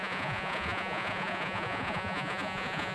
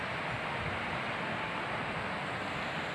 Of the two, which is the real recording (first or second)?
second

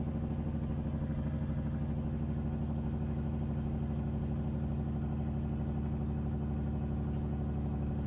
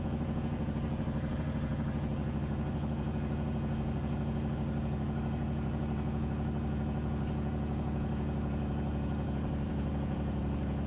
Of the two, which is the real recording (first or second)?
first